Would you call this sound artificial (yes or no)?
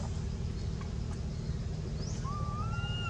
no